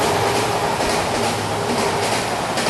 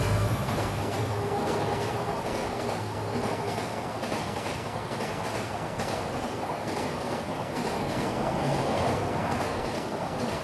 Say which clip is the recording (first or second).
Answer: first